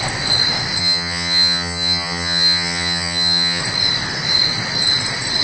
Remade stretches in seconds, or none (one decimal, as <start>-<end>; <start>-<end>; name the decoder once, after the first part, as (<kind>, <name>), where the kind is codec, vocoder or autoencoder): 0.8-3.6 (vocoder, HiFi-GAN)